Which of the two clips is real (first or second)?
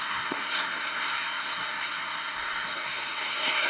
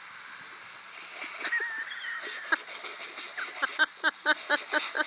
second